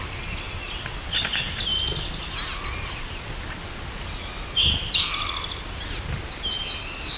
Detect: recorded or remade recorded